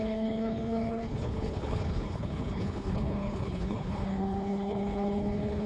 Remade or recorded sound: remade